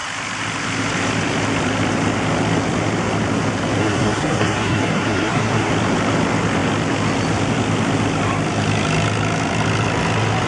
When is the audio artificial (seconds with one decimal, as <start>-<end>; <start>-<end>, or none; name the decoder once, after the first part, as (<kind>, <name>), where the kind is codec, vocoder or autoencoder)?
3.8-5.7 (codec, SNAC)